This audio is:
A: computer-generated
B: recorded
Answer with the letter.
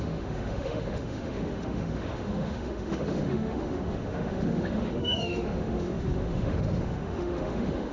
A